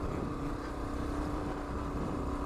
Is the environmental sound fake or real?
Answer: real